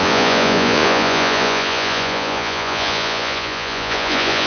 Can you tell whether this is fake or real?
fake